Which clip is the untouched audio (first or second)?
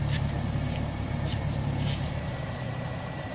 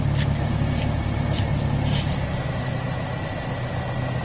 second